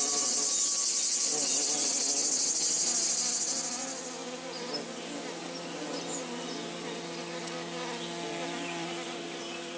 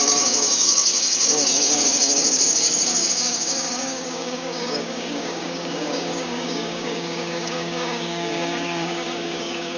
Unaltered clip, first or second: first